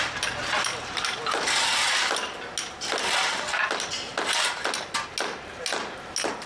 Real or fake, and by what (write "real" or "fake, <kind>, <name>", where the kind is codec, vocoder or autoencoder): real